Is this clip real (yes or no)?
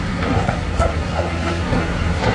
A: no